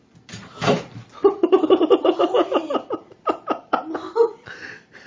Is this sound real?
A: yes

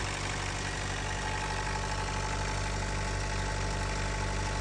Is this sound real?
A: yes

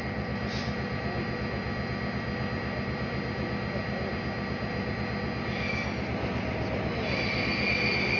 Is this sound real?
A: yes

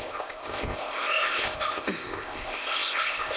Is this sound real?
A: no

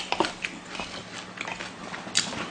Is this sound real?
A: yes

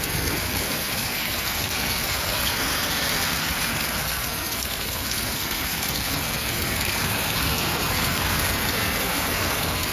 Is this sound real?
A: no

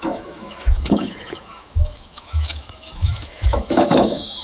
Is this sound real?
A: no